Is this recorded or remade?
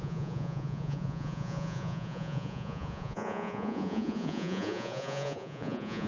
remade